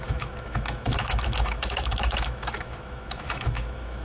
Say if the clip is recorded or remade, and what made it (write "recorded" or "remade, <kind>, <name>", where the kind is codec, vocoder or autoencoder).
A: remade, autoencoder, DAC-VAE